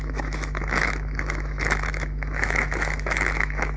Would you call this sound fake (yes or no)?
yes